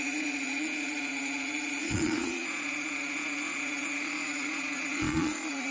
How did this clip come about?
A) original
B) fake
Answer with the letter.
B